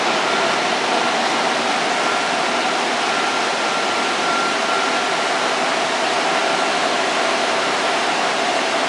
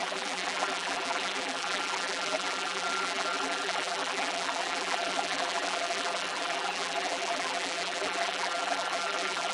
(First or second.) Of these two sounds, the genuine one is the first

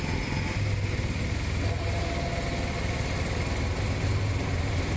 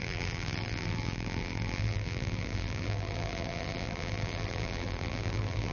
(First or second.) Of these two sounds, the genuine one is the first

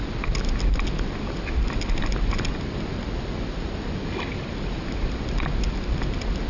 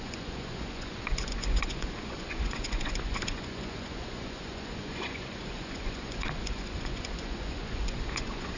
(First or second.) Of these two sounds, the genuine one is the first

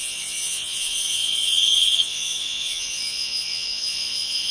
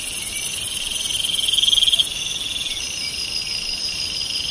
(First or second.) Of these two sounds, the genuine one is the second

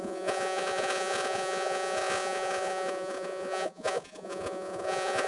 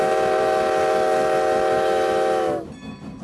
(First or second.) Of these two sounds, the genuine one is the second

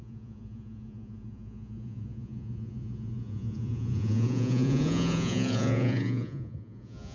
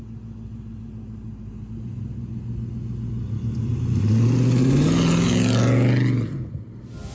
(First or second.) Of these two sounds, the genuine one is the second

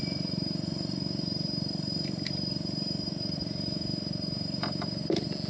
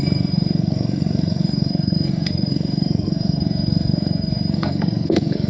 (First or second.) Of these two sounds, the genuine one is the first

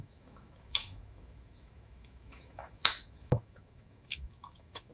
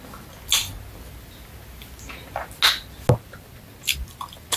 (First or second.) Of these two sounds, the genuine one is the second